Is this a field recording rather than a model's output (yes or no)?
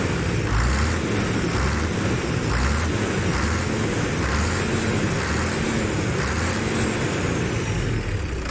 yes